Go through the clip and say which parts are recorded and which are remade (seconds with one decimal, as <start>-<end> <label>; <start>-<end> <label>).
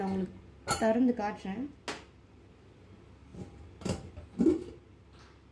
0.0-5.5 recorded